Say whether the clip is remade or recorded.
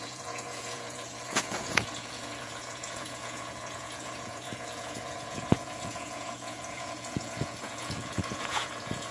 remade